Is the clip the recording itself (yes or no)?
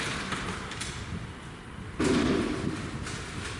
yes